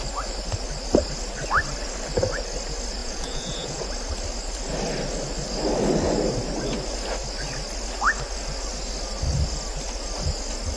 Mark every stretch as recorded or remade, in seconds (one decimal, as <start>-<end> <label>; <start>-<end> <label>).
0.0-3.0 recorded; 3.0-3.9 remade; 3.9-10.8 recorded